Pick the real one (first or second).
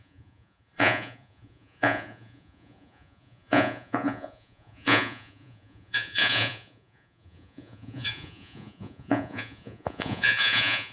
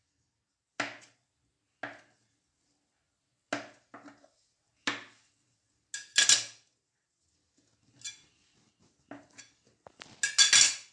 second